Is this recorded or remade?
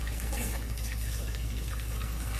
remade